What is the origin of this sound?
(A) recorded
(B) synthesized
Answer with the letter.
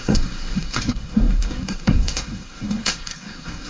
B